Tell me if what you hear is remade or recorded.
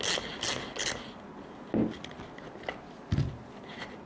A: recorded